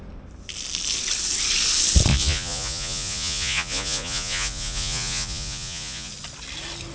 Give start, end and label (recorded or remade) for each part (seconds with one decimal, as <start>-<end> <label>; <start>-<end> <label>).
0.0-2.1 recorded; 2.1-6.1 remade; 6.1-6.9 recorded